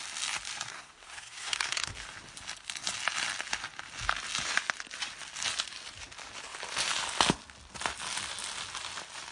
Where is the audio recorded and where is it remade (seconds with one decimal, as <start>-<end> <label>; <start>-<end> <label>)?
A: 0.0-0.7 recorded; 0.7-1.9 remade; 1.9-9.3 recorded